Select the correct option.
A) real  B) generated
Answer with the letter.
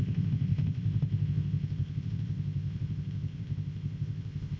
B